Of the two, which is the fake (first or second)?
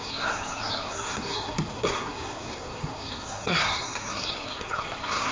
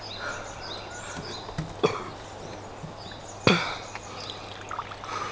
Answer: first